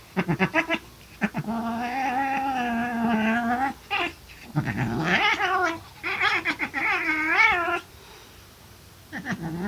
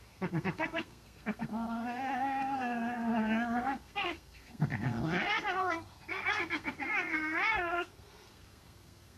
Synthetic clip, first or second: second